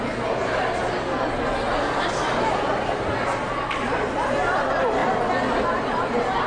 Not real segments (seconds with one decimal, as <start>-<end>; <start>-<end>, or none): none